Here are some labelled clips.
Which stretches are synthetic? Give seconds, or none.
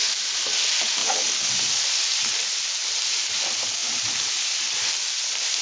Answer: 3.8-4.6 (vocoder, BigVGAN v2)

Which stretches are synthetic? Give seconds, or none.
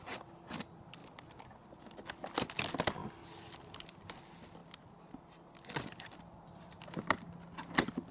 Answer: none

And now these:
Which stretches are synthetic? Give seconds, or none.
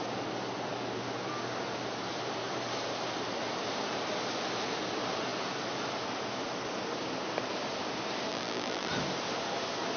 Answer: 8.3-8.9 (vocoder, BigVGAN v2)